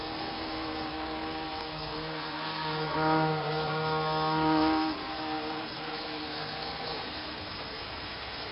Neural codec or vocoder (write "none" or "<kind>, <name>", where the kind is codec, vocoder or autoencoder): codec, SNAC